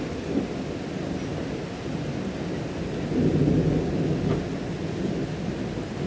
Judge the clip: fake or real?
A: real